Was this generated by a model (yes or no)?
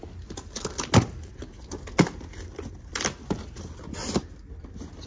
no